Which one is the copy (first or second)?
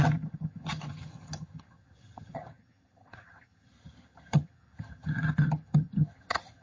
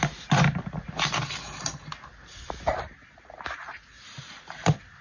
first